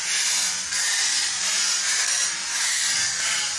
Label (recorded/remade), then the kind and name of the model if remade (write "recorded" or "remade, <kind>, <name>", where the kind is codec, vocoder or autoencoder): recorded